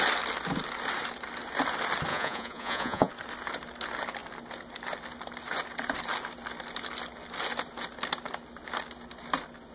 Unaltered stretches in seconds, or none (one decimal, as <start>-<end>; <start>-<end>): 0.0-2.1; 3.1-9.7